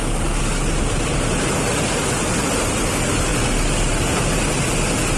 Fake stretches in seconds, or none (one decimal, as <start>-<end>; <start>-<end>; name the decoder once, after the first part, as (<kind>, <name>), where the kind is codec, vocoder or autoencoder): 2.4-2.9 (vocoder, BigVGAN v2)